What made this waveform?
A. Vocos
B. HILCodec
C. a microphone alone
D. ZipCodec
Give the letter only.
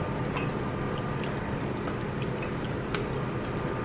C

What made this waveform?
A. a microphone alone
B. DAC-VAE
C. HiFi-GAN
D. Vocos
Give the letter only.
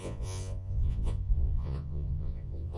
D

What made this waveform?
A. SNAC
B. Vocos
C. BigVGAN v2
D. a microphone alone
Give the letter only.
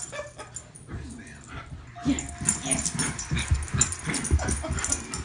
D